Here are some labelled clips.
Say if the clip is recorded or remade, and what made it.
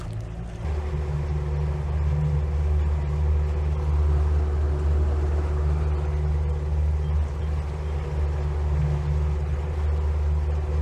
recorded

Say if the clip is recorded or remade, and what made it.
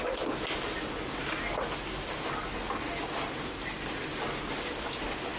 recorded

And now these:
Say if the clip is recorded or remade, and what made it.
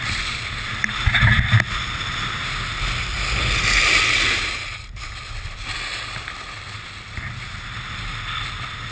recorded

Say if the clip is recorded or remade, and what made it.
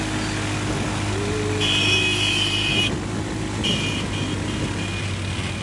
recorded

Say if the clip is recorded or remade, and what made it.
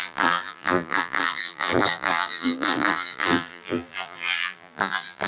remade, vocoder, BigVGAN v2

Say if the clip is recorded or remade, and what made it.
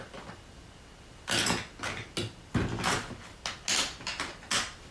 recorded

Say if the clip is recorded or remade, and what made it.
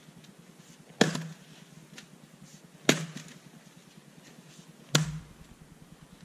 recorded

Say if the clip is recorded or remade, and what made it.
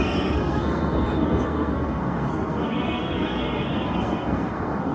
remade, codec, SNAC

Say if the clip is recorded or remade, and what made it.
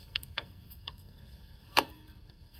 remade, codec, SNAC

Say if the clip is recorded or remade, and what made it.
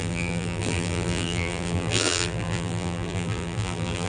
remade, vocoder, BigVGAN v2